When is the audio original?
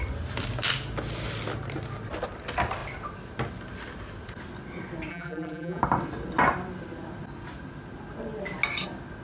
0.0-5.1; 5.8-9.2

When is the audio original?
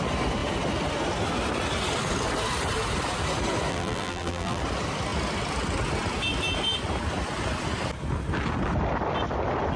0.0-3.7; 4.6-9.8